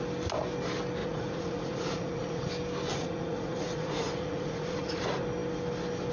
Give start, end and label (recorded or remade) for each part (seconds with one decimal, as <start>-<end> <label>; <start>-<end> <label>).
0.0-1.0 recorded; 1.0-2.5 remade; 2.5-2.9 recorded; 2.9-5.0 remade; 5.0-6.1 recorded